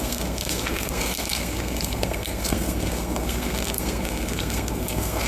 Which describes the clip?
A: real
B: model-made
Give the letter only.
B